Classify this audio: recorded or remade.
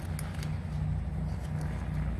recorded